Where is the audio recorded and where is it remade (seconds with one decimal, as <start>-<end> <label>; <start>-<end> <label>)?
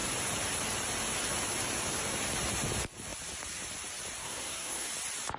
0.0-4.2 recorded; 4.2-4.9 remade; 4.9-5.4 recorded